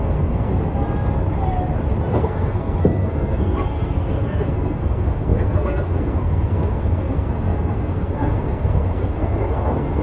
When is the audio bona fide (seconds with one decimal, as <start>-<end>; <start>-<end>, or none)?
0.5-2.1